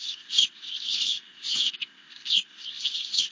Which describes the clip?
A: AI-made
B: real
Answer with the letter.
A